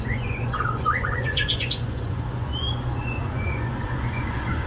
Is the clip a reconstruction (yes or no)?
yes